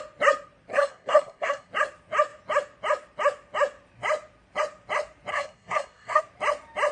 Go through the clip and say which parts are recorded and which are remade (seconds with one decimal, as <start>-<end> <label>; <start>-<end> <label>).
0.0-0.7 recorded; 0.7-1.7 remade; 1.7-5.3 recorded; 5.3-6.2 remade; 6.2-6.9 recorded